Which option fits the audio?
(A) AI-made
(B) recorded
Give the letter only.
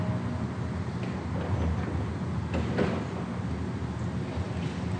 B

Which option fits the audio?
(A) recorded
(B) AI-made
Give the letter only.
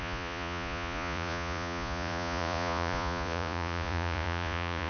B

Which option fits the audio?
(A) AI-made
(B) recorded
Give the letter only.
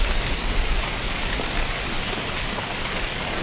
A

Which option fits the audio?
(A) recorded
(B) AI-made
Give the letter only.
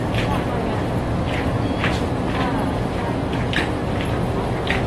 A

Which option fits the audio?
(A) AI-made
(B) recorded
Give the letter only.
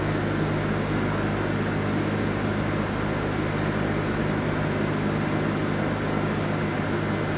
B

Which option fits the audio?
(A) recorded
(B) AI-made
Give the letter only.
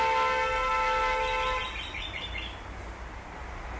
A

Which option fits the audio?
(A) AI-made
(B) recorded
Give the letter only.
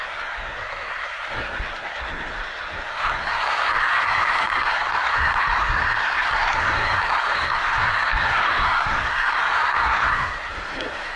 A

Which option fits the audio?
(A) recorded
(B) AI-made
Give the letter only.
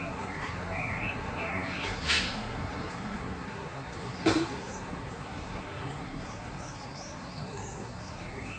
B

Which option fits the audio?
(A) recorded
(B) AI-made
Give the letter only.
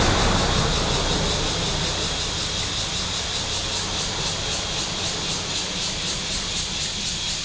A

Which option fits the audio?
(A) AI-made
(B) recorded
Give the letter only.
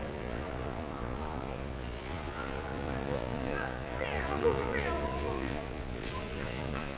A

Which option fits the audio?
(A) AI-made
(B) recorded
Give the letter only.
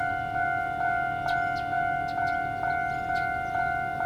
B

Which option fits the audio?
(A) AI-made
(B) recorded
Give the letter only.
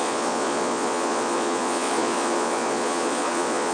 A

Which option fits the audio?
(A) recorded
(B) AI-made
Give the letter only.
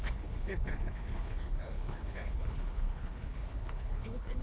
B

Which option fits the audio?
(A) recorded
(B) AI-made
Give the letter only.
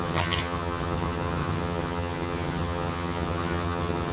B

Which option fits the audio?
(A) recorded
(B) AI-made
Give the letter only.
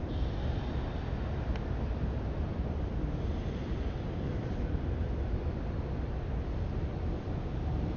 A